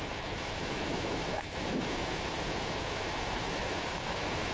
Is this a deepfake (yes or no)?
yes